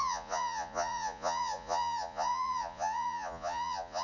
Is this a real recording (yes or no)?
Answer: no